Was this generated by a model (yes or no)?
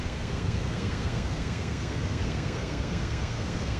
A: yes